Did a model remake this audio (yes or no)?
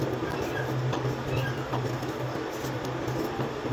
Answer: no